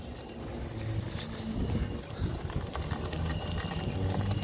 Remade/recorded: recorded